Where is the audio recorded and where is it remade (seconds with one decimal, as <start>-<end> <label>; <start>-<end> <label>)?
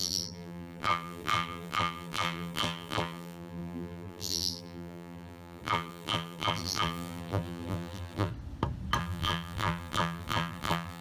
0.0-8.3 remade; 8.3-9.0 recorded; 9.0-11.0 remade